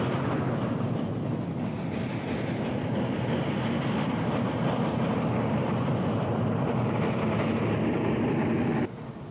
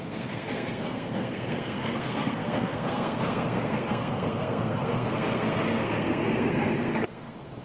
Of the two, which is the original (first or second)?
first